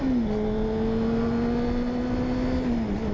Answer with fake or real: real